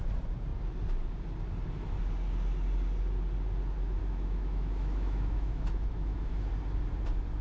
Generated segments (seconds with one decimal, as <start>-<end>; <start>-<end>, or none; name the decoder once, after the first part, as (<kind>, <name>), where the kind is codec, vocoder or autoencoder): 4.0-6.5 (autoencoder, DAC-VAE)